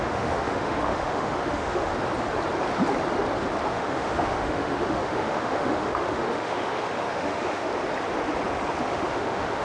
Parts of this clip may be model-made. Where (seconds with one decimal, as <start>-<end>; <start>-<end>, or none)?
0.0-1.9; 3.7-7.7; 8.9-9.6